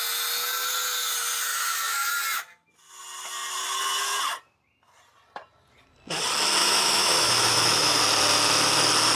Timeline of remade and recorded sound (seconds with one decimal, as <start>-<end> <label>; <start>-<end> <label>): 0.0-1.5 recorded; 1.5-2.1 remade; 2.1-6.6 recorded; 6.6-8.0 remade; 8.0-9.2 recorded